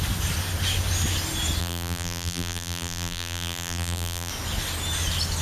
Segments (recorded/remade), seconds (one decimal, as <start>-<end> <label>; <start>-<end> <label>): 0.0-1.6 recorded; 1.6-4.3 remade; 4.3-5.4 recorded